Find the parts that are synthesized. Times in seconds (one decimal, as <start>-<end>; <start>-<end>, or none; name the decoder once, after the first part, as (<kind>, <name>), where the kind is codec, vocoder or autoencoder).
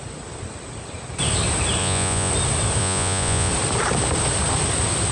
1.8-2.3 (vocoder, Vocos); 2.8-3.5